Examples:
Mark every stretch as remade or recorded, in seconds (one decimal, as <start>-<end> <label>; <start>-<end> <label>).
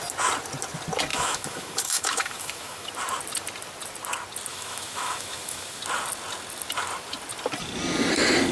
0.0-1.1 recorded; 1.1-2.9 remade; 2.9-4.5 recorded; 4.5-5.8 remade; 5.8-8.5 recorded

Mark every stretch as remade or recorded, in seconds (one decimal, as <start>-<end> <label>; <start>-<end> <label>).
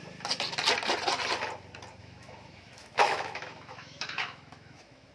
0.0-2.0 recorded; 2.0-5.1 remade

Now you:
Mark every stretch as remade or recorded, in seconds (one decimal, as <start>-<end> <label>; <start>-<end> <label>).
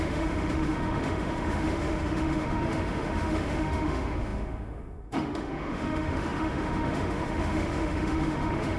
0.0-8.8 remade